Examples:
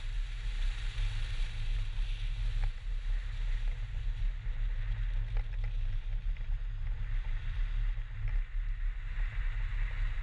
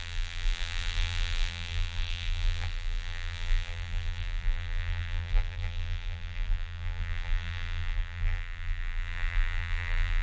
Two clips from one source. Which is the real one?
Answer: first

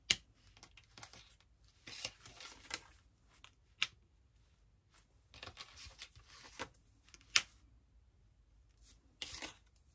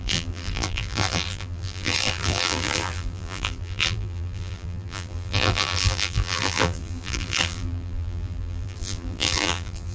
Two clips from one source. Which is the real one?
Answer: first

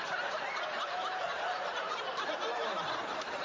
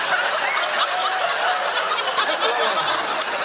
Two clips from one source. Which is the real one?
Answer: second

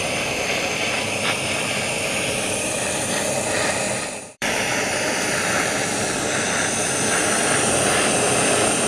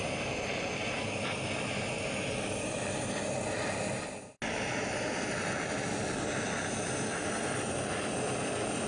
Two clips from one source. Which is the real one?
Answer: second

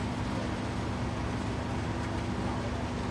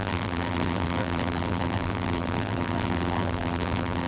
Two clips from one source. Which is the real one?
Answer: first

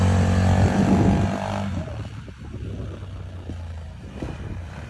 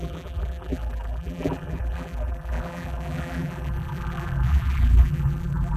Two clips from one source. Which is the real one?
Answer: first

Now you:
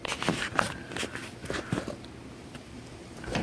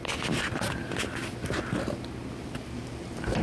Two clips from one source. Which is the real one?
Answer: second